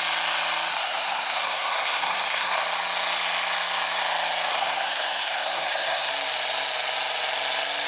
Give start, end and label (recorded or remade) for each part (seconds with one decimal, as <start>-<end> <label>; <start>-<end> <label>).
0.0-0.7 recorded; 0.7-2.6 remade; 2.6-4.5 recorded; 4.5-6.1 remade; 6.1-7.9 recorded